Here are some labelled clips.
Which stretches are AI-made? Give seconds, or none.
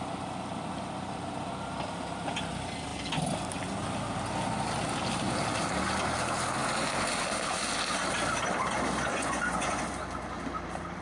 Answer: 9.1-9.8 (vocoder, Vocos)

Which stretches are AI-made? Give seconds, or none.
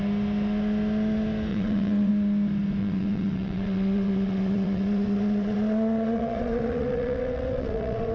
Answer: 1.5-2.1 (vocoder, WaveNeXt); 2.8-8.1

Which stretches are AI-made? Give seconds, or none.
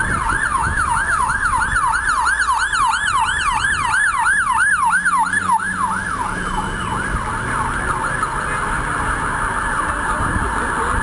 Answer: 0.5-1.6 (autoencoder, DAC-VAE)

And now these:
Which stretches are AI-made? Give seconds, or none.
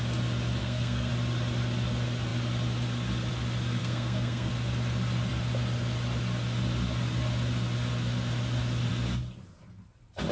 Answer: 0.6-1.1 (codec, SNAC); 3.8-4.5